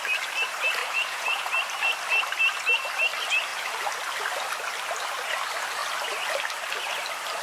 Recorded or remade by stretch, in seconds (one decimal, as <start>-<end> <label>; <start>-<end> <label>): 0.0-0.8 recorded; 0.8-1.5 remade; 1.5-7.4 recorded